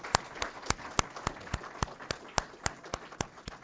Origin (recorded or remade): recorded